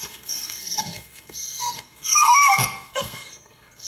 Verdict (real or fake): fake